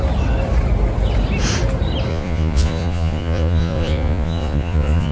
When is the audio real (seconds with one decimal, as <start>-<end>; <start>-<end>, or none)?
0.0-2.1